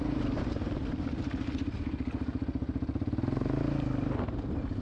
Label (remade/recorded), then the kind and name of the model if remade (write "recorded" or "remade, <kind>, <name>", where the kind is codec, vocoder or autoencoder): recorded